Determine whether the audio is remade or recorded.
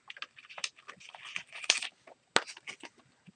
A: recorded